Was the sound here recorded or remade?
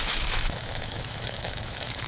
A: remade